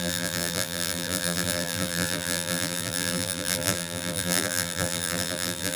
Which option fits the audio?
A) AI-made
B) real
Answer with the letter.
A